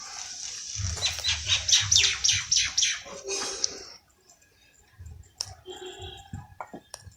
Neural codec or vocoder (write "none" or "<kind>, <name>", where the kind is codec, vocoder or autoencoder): vocoder, BigVGAN v2